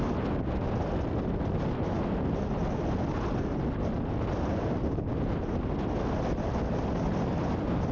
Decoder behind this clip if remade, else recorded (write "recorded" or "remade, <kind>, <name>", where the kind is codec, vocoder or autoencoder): recorded